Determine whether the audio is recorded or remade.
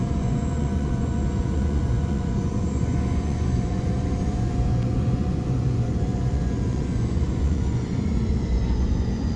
remade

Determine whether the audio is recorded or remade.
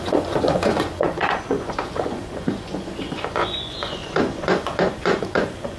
remade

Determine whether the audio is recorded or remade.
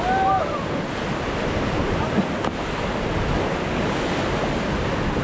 recorded